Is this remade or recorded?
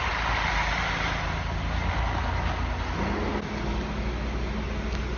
recorded